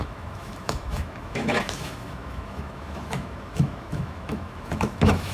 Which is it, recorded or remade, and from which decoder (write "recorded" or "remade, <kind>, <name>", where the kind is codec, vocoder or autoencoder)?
remade, autoencoder, DAC-VAE